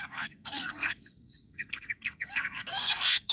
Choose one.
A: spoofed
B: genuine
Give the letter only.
A